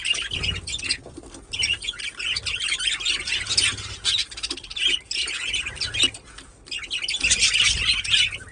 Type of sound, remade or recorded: recorded